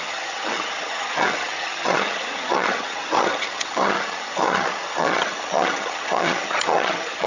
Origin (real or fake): fake